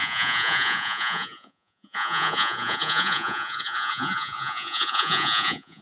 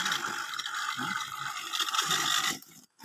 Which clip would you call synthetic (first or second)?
first